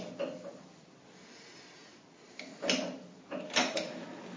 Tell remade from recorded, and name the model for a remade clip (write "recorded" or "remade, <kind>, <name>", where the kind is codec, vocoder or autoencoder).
recorded